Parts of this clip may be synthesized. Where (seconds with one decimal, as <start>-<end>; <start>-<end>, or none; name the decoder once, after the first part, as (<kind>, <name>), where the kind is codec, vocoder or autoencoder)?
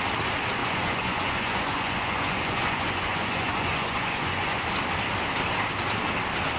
0.6-4.6 (vocoder, Vocos)